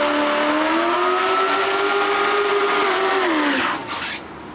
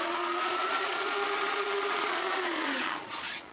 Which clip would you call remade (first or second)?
second